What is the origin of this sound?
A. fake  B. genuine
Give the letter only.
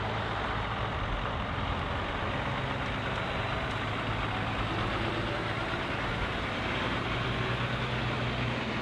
B